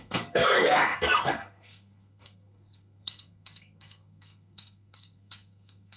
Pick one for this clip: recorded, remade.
remade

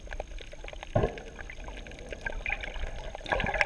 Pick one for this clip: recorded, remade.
recorded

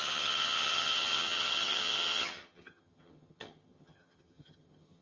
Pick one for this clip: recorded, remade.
remade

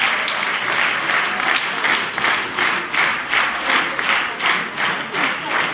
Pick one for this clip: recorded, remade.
recorded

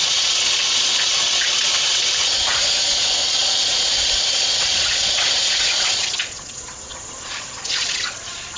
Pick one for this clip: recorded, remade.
remade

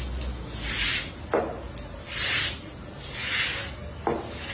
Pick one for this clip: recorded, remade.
recorded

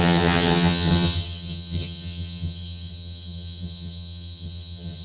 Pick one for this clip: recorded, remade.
remade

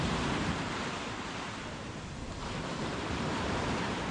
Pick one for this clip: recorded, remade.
remade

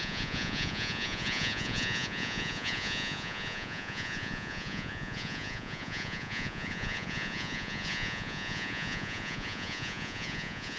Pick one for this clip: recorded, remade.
remade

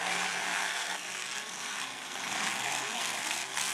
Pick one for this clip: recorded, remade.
remade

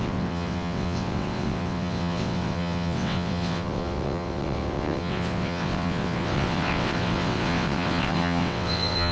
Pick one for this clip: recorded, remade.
remade